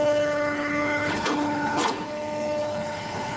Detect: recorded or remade remade